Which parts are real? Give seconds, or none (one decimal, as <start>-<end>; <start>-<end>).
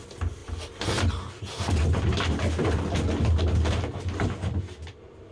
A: 0.0-0.4; 1.1-5.3